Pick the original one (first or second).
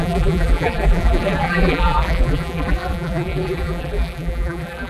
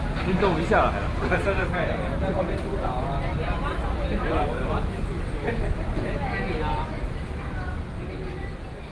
second